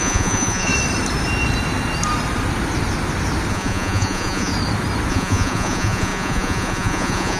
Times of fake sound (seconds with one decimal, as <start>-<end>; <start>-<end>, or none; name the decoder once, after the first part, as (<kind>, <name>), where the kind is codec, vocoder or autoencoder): 0.0-0.7 (vocoder, Vocos); 3.5-4.5; 5.1-7.4